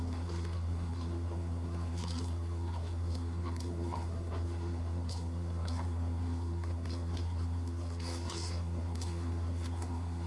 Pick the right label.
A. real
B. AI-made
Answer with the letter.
B